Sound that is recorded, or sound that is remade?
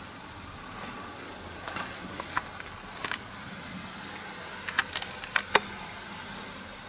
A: recorded